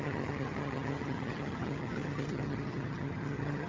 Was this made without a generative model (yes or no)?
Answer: no